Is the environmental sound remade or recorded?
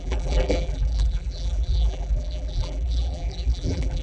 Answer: remade